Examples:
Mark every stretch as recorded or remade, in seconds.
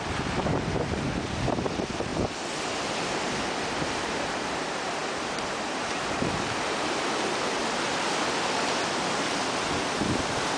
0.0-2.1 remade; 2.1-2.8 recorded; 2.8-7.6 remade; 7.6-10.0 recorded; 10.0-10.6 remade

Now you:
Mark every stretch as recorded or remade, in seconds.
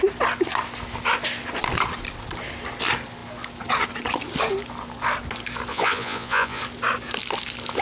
0.0-5.7 recorded; 5.7-6.6 remade; 6.6-7.8 recorded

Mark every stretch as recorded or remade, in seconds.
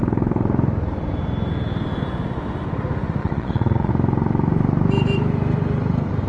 0.0-3.2 recorded; 3.2-3.9 remade; 3.9-6.3 recorded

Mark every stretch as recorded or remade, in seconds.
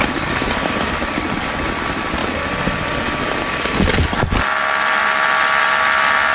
0.0-6.3 recorded